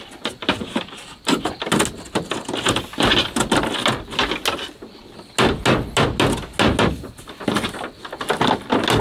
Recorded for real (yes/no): yes